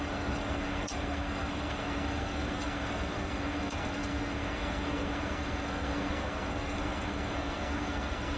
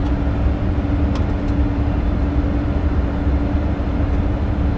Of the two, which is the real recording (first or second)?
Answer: second